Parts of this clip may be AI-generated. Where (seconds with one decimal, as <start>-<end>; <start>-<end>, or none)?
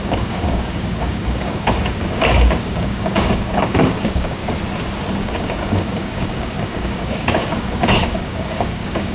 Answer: 0.0-4.4; 5.2-9.1